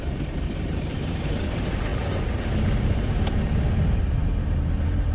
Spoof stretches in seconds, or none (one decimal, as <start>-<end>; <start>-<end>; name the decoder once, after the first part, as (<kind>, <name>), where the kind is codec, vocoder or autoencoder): 0.0-5.1 (vocoder, BigVGAN v2)